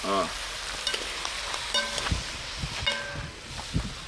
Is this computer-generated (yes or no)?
no